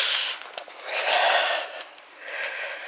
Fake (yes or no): no